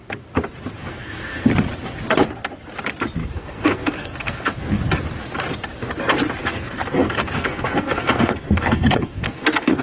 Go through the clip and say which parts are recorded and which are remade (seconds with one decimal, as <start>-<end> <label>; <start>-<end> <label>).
0.0-0.8 recorded; 0.8-1.5 remade; 1.5-3.2 recorded; 3.2-4.8 remade; 4.8-6.4 recorded; 6.4-9.8 remade